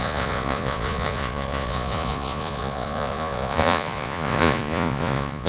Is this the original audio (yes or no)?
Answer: no